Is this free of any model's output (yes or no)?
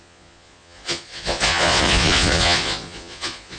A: no